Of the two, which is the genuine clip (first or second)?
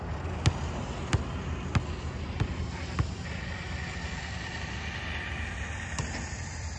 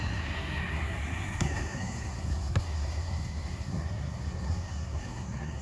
first